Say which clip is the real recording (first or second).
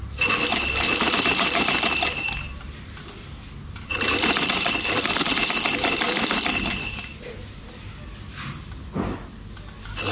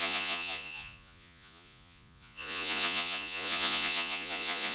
first